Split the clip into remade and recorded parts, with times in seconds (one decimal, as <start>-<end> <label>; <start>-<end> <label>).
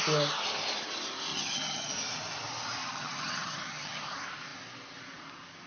0.0-1.3 recorded; 1.3-1.9 remade; 1.9-2.8 recorded; 2.8-4.0 remade; 4.0-5.7 recorded